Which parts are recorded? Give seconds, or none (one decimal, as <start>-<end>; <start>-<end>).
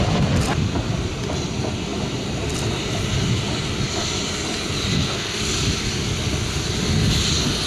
0.0-4.9; 5.4-7.7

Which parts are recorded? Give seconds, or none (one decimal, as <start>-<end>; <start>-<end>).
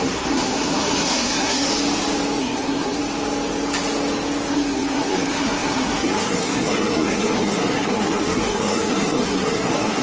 1.7-2.4; 3.0-4.5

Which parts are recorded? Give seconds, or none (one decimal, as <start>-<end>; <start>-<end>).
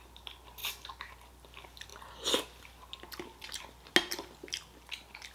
0.0-5.3